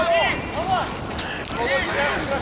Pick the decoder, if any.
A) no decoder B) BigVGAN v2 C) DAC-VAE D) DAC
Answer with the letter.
A